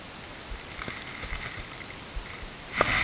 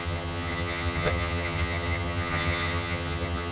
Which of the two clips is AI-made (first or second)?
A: second